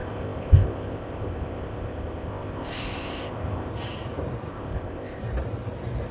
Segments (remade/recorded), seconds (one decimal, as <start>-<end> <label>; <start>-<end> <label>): 0.0-3.7 remade; 3.7-4.5 recorded; 4.5-5.2 remade; 5.2-6.1 recorded